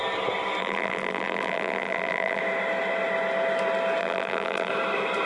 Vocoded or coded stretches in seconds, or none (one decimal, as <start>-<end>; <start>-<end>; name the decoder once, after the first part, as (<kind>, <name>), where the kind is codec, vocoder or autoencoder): 0.6-2.4 (vocoder, BigVGAN v2); 4.0-4.7